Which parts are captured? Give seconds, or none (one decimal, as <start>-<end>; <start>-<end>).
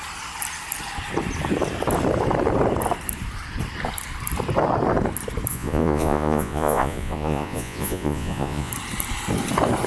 0.0-5.5; 8.7-9.9